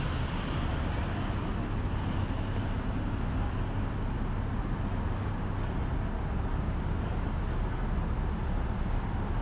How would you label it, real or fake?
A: real